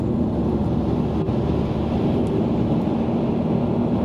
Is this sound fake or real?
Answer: real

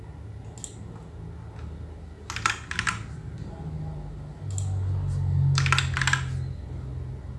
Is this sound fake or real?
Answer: real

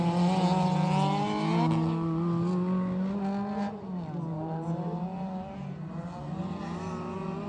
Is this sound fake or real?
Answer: real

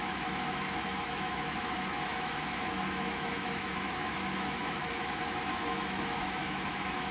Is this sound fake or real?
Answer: fake